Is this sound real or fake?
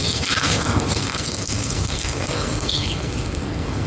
fake